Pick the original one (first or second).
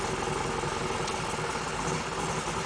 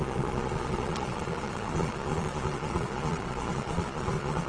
first